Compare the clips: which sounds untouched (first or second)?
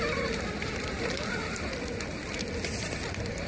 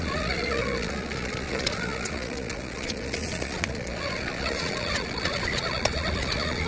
first